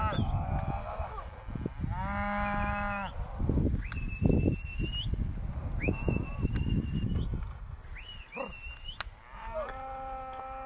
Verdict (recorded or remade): recorded